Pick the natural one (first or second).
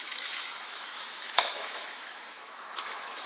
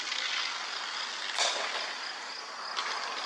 second